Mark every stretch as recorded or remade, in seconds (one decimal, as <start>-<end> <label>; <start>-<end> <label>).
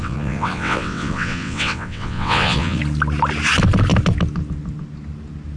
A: 0.0-2.8 remade; 2.8-5.6 recorded